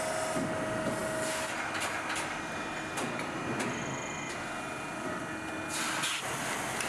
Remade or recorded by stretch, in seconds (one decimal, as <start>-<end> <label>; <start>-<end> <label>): 0.0-6.9 recorded